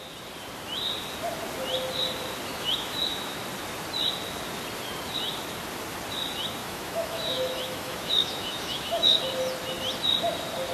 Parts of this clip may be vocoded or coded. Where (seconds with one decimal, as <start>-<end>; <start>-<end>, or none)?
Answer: 2.5-3.4; 6.6-9.2